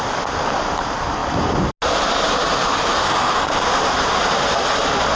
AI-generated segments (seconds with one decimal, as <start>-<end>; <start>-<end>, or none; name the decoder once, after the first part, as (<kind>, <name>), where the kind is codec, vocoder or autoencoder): 2.9-3.6 (codec, SNAC)